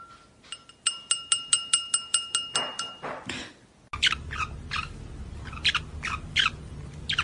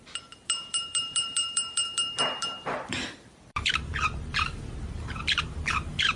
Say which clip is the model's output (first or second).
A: second